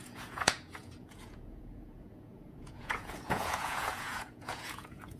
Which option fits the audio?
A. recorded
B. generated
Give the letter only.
B